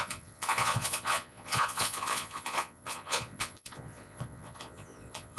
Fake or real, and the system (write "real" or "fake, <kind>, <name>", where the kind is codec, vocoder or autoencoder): fake, vocoder, Vocos